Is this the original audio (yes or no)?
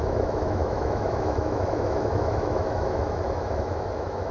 no